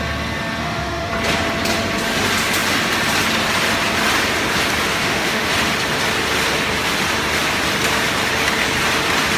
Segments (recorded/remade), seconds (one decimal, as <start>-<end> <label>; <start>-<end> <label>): 0.0-0.6 recorded; 0.6-1.1 remade; 1.1-5.0 recorded; 5.0-5.5 remade; 5.5-9.4 recorded

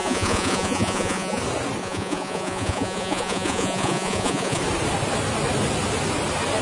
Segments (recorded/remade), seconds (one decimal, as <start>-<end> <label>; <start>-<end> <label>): 0.0-1.4 remade; 1.4-1.8 recorded; 1.8-4.6 remade; 4.6-6.6 recorded

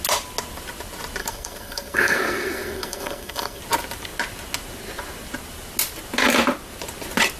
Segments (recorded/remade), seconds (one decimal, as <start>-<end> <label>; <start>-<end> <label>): 0.0-1.2 recorded; 1.2-3.6 remade; 3.6-7.4 recorded

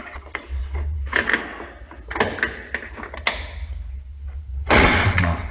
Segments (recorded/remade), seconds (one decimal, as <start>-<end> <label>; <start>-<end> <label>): 0.0-1.3 remade; 1.3-3.9 recorded; 3.9-5.5 remade

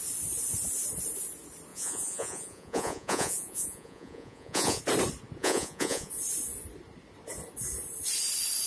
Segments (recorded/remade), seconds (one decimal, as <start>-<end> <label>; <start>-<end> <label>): 0.0-1.7 recorded; 1.7-4.8 remade; 4.8-5.4 recorded; 5.4-6.1 remade; 6.1-8.7 recorded